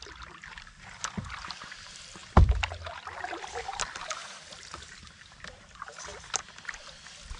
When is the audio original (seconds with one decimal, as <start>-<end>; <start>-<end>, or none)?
2.2-3.6; 6.1-6.8